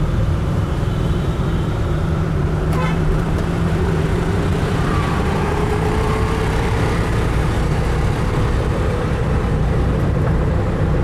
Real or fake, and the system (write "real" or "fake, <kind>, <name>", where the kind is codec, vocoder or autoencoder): fake, vocoder, BigVGAN v2